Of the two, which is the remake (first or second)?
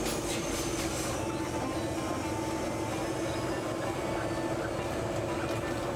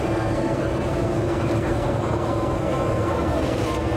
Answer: second